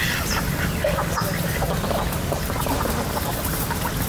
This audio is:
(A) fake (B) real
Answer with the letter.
B